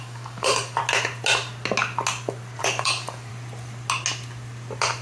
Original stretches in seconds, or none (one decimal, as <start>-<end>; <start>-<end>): 0.8-2.6; 3.3-5.0